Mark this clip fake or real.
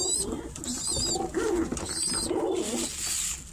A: real